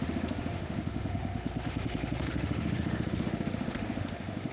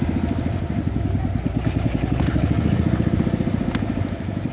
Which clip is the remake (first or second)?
first